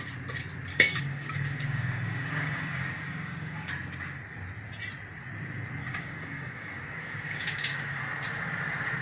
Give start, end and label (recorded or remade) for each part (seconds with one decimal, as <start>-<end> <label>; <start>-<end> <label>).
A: 0.0-0.7 recorded; 0.7-3.7 remade; 3.7-5.8 recorded; 5.8-8.0 remade; 8.0-9.0 recorded